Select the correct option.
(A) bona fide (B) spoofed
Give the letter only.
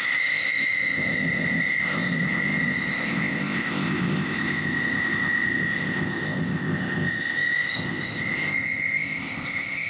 B